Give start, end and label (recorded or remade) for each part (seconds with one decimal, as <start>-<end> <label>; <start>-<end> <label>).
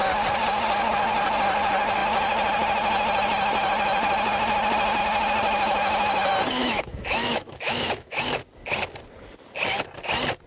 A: 0.0-6.6 recorded; 6.6-8.2 remade; 8.2-10.5 recorded